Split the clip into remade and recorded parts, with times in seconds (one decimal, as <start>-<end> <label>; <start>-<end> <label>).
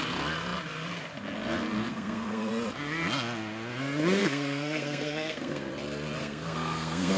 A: 0.0-1.9 recorded; 1.9-2.5 remade; 2.5-4.2 recorded; 4.2-5.7 remade; 5.7-6.2 recorded; 6.2-7.2 remade